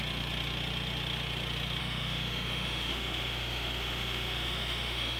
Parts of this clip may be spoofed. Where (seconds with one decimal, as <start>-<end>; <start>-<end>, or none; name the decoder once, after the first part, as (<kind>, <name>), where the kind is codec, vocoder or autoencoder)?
1.8-5.2 (autoencoder, DAC-VAE)